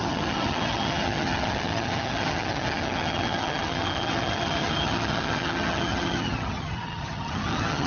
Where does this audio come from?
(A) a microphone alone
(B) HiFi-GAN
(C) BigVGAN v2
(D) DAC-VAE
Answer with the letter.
B